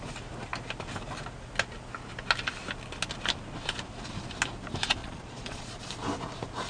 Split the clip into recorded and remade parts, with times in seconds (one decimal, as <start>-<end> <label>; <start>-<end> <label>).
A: 0.0-5.0 recorded; 5.0-5.8 remade; 5.8-6.7 recorded